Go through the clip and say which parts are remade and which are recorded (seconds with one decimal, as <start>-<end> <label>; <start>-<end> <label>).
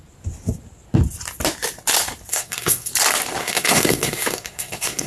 0.0-2.3 recorded; 2.3-2.9 remade; 2.9-3.4 recorded; 3.4-5.1 remade